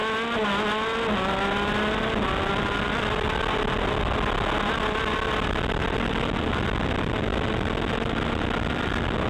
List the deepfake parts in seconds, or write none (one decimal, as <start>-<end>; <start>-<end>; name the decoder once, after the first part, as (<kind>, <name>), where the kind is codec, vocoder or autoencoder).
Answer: none